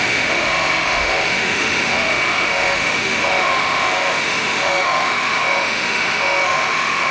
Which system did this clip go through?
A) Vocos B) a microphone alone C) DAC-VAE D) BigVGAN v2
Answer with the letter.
C